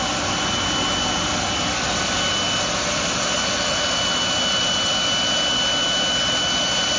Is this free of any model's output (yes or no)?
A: yes